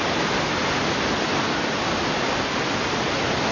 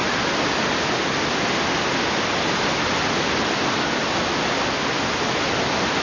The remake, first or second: first